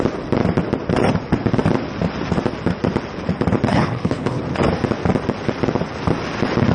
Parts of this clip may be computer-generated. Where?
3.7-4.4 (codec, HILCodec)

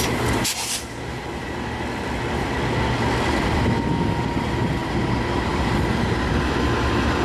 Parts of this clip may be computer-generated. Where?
none

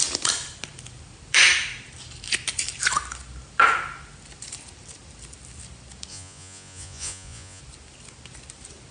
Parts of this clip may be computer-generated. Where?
6.1-7.6 (vocoder, Vocos)

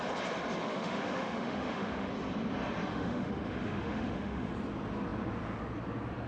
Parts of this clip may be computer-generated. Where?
0.6-2.1 (autoencoder, DAC-VAE); 2.9-4.5